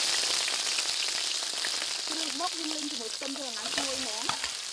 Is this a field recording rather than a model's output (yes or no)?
yes